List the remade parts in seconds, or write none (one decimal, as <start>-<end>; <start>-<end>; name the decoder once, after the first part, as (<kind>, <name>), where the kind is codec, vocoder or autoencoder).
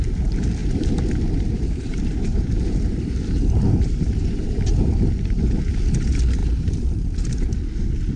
0.6-5.4 (vocoder, BigVGAN v2); 6.4-7.0